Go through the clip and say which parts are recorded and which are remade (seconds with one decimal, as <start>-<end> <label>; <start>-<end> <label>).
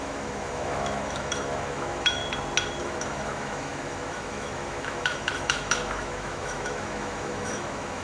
0.0-2.2 remade; 2.2-2.8 recorded; 2.8-8.0 remade